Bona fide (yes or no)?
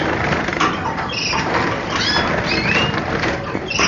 yes